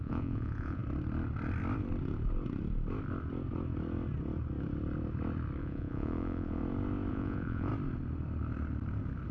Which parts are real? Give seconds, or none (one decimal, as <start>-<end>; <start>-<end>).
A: 0.8-5.6; 6.6-7.1; 7.7-9.3